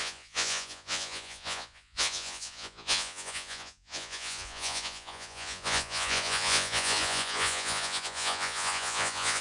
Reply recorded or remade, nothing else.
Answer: remade